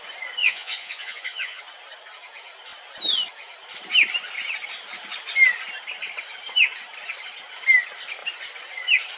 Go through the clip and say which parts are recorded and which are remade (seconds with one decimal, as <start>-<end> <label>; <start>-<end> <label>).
0.0-0.4 recorded; 0.4-1.6 remade; 1.6-9.2 recorded

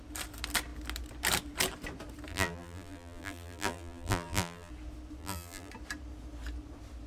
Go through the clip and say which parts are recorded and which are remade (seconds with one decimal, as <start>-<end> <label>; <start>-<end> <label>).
0.0-2.3 recorded; 2.3-4.7 remade; 4.7-5.2 recorded; 5.2-5.7 remade; 5.7-7.1 recorded